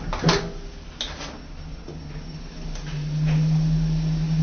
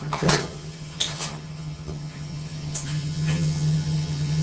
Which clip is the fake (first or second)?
second